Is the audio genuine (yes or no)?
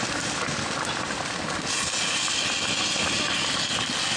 yes